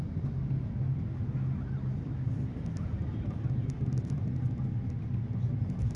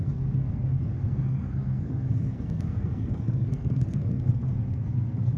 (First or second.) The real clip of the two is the first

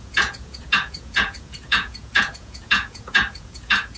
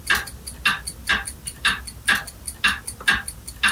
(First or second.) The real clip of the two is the second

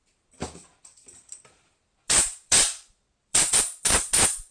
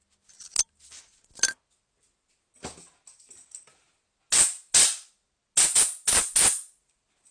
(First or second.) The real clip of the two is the second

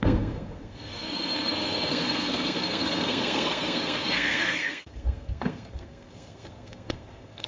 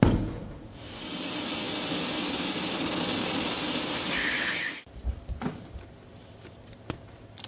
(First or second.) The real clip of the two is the second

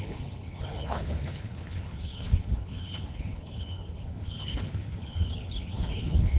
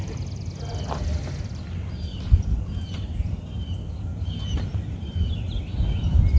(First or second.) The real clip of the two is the second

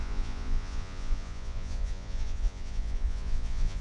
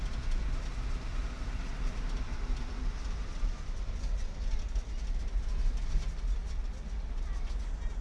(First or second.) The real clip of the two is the second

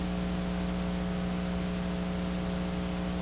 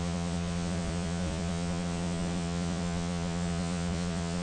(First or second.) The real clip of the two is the first